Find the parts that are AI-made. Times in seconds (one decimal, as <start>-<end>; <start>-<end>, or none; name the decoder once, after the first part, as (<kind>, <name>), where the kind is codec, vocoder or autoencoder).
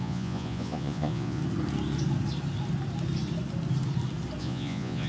0.0-1.4 (vocoder, Vocos); 4.4-5.1